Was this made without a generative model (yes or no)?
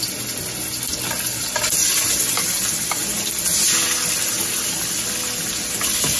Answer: yes